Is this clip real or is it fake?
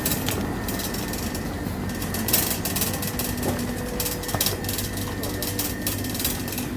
real